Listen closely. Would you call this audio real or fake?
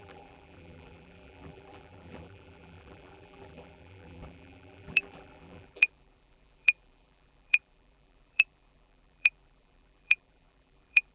fake